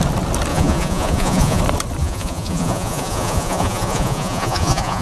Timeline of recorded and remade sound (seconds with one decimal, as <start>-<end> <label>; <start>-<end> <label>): 0.0-0.5 recorded; 0.5-1.6 remade; 1.6-2.0 recorded; 2.0-5.0 remade